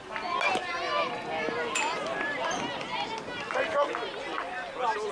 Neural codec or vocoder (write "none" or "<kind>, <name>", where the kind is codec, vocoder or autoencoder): none